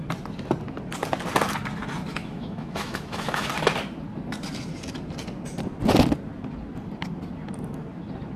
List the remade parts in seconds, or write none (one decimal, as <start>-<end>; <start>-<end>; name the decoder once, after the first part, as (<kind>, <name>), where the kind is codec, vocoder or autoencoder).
2.1-3.5 (autoencoder, DAC-VAE)

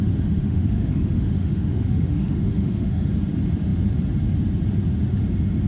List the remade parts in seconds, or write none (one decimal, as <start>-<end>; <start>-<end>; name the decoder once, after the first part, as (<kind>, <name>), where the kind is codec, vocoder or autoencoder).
0.4-3.1 (autoencoder, DAC-VAE)

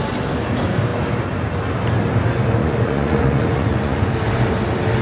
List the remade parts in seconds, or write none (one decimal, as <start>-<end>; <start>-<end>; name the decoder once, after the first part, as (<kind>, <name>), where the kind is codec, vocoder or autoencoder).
2.6-4.1 (vocoder, Vocos)

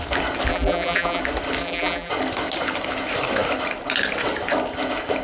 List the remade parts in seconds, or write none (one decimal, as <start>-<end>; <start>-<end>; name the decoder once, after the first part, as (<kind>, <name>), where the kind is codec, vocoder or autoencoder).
0.5-1.2 (vocoder, BigVGAN v2); 1.6-2.1

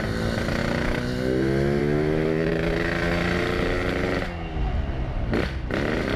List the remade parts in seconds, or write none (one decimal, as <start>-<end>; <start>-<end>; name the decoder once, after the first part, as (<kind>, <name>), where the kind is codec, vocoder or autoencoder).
none

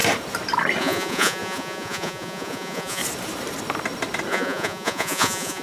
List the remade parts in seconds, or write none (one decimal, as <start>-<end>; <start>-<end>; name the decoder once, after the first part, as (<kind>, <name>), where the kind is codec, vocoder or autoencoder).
0.8-3.0 (vocoder, Vocos); 4.3-5.6

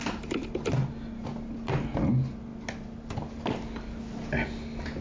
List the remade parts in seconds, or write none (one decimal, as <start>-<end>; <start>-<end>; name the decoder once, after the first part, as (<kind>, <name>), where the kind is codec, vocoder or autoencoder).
none